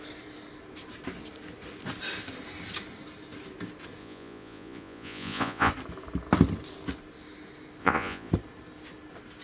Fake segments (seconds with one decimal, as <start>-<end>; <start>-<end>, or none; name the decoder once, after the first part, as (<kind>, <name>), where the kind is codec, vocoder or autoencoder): 4.0-5.7 (vocoder, Vocos); 7.8-8.3